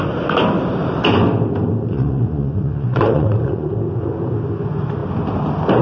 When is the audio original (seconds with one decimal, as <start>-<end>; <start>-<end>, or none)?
0.0-1.7; 3.7-5.8